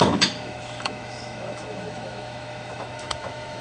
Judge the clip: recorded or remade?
remade